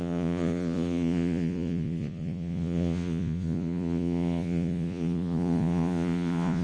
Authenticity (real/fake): fake